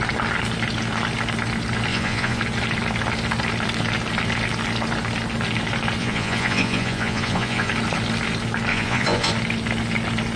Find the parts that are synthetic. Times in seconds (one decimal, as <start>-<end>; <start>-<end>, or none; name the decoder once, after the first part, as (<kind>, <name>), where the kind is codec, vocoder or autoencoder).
1.9-2.4 (vocoder, Vocos); 6.0-7.7; 8.7-9.3